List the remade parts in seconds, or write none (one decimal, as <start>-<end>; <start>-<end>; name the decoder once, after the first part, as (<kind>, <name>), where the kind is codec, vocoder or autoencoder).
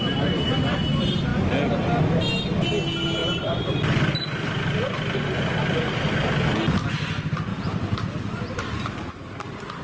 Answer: 3.2-3.7 (vocoder, BigVGAN v2); 7.5-9.1